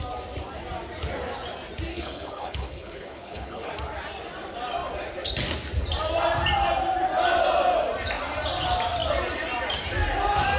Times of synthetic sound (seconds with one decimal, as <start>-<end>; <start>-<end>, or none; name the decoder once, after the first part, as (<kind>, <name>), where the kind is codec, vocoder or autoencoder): 1.9-3.7 (codec, HILCodec)